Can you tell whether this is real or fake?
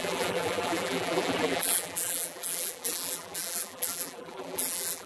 fake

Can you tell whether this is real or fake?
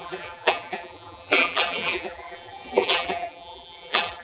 fake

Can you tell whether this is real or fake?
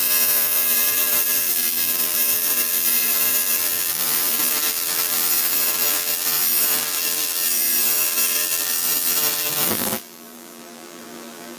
fake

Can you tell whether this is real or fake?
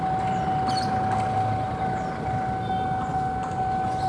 real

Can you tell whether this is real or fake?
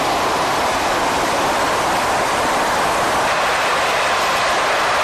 fake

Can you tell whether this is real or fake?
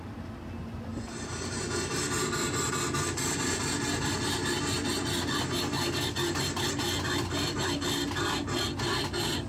real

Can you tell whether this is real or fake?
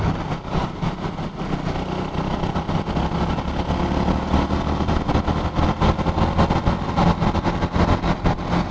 real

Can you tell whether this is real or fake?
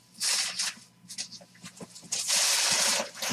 real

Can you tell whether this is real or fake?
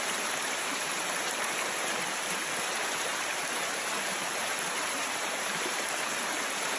fake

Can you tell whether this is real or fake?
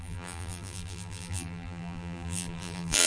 fake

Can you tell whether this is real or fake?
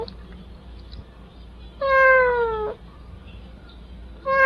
real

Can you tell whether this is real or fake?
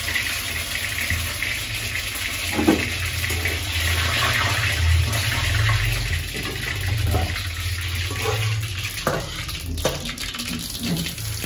real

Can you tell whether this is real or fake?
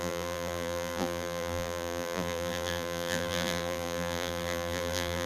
fake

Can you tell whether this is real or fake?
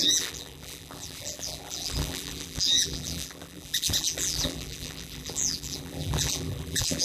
fake